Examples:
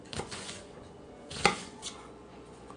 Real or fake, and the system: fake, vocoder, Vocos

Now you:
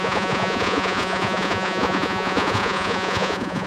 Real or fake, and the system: fake, vocoder, Vocos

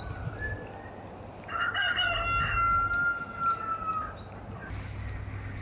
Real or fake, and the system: real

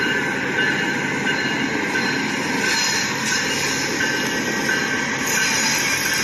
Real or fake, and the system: real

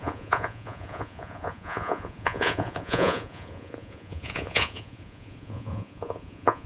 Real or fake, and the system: fake, vocoder, Vocos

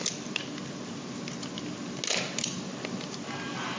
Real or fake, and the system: real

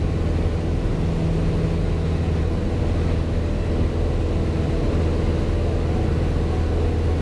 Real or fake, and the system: real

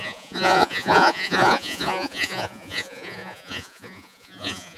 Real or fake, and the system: fake, vocoder, Vocos